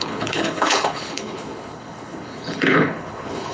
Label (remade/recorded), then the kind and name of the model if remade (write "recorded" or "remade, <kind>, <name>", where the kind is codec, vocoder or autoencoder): remade, codec, HILCodec